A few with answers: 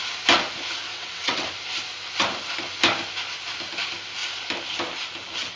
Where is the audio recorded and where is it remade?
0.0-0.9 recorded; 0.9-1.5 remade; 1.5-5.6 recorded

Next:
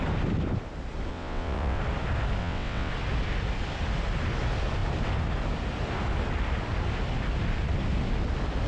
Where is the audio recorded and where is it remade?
0.0-1.1 recorded; 1.1-1.8 remade; 1.8-2.4 recorded; 2.4-2.9 remade; 2.9-8.7 recorded

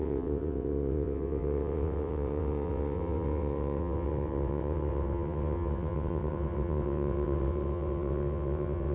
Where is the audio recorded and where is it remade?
0.0-8.9 remade

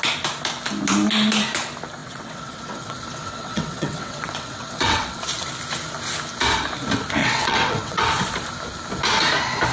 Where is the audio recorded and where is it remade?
0.0-2.0 recorded; 2.0-5.2 remade; 5.2-7.2 recorded; 7.2-8.0 remade; 8.0-9.7 recorded

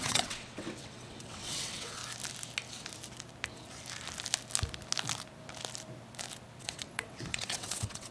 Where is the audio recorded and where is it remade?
0.0-2.0 remade; 2.0-6.6 recorded; 6.6-8.1 remade